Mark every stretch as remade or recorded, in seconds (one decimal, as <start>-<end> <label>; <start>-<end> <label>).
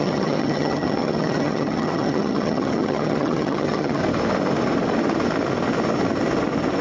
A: 0.0-4.0 remade; 4.0-6.8 recorded